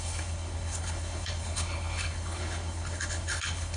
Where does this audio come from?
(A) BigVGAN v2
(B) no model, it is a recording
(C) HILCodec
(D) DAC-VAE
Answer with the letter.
C